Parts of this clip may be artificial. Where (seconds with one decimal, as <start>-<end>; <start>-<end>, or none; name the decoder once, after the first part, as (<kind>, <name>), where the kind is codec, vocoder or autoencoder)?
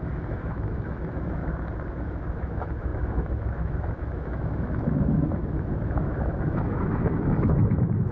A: 0.0-1.4 (autoencoder, DAC-VAE); 1.9-8.1